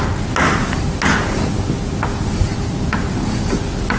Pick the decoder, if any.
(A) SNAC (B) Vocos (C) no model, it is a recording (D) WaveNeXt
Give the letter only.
C